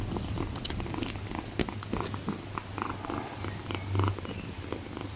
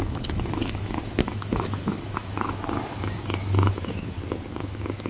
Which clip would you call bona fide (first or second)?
first